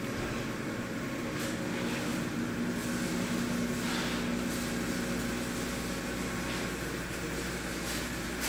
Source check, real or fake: real